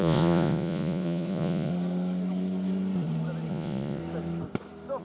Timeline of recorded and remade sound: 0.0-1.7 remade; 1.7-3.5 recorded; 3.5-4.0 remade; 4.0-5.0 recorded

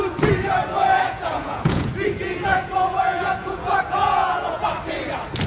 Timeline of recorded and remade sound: 0.0-0.9 recorded; 0.9-1.9 remade; 1.9-2.5 recorded; 2.5-4.6 remade; 4.6-5.5 recorded

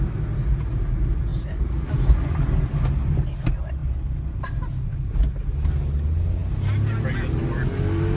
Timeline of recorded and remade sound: 0.0-8.2 recorded

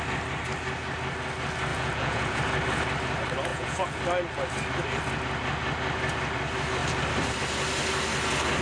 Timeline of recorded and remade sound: 0.0-1.7 recorded; 1.7-2.4 remade; 2.4-3.5 recorded; 3.5-4.0 remade; 4.0-8.6 recorded